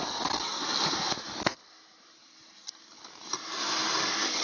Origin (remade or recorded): recorded